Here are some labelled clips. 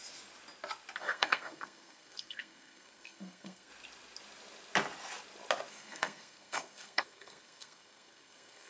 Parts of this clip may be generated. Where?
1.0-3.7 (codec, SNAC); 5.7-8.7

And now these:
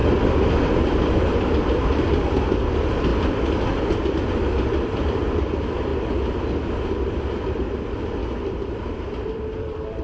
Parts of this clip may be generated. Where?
0.5-5.9 (vocoder, BigVGAN v2); 6.7-8.2; 8.9-10.0

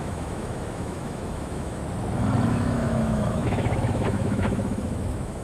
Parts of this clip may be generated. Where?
0.0-1.8 (autoencoder, DAC-VAE); 2.5-5.4